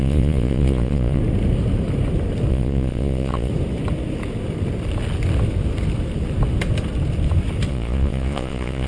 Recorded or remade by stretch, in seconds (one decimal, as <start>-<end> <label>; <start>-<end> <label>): 0.0-1.2 remade; 1.2-2.5 recorded; 2.5-3.5 remade; 3.5-7.7 recorded; 7.7-8.9 remade